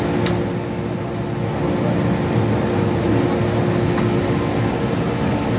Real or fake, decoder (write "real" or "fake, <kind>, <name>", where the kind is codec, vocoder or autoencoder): real